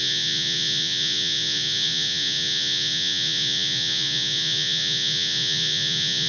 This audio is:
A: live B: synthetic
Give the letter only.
B